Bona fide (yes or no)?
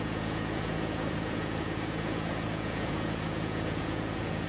no